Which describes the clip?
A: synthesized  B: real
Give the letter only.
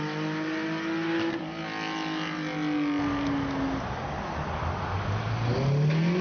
B